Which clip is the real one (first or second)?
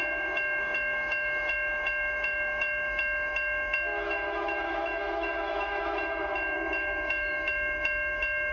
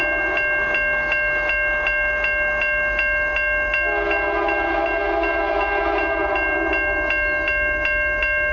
second